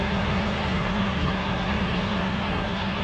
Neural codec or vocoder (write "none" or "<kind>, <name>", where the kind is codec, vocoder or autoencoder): codec, SNAC